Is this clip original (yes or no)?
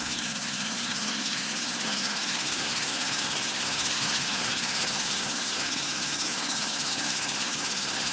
no